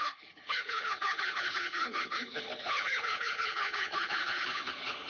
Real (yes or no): no